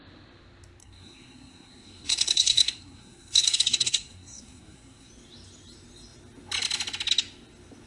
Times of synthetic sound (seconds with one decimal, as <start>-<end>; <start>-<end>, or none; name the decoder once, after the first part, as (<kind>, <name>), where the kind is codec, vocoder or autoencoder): 0.8-5.1 (codec, SNAC)